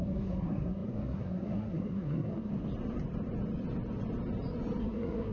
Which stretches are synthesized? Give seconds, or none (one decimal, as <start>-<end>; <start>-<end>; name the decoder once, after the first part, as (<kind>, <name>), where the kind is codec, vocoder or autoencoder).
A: 0.0-2.5 (codec, SNAC); 4.8-5.3